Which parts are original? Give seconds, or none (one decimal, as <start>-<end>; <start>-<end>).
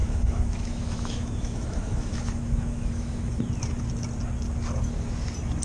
3.4-5.6